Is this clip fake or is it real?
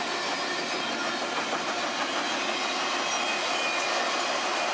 real